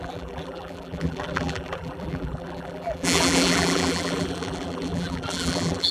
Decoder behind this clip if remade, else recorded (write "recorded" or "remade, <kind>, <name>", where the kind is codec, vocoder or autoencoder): remade, vocoder, BigVGAN v2